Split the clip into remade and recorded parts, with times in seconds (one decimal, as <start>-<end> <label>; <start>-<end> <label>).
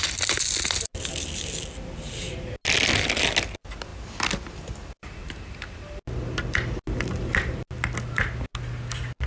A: 0.0-9.3 recorded